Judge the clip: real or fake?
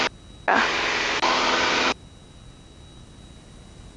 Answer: real